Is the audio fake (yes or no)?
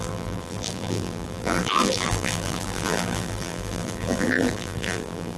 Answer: yes